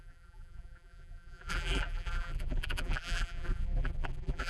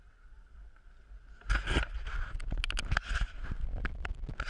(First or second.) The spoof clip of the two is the first